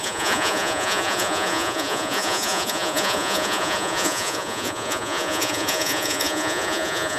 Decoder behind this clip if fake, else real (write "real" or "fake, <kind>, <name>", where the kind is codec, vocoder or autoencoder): fake, vocoder, Vocos